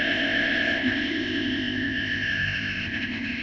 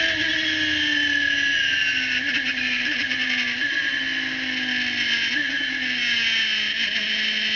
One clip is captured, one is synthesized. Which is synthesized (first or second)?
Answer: first